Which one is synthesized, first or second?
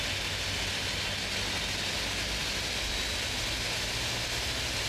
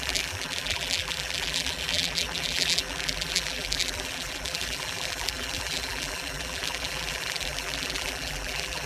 second